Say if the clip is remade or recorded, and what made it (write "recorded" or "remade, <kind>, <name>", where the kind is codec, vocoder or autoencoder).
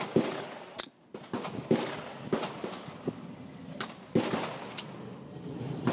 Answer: recorded